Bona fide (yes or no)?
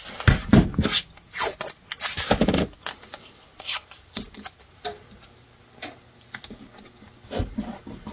yes